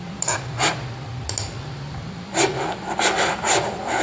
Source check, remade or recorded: recorded